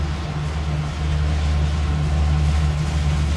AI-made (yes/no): no